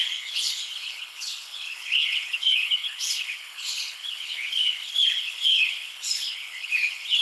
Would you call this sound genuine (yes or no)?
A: no